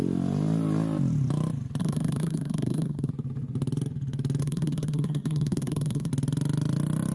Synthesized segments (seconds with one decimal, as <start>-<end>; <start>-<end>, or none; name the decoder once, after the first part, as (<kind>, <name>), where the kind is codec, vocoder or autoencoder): 1.8-3.1 (codec, SNAC); 4.4-6.1

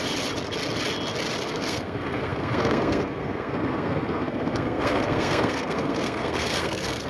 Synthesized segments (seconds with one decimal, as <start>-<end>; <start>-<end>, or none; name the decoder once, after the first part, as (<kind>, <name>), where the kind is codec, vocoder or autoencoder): 1.4-7.1 (codec, SNAC)